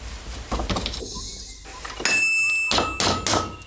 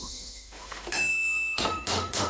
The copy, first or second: second